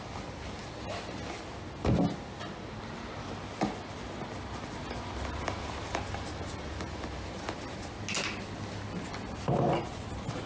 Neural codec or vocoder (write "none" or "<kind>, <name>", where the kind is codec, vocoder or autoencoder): none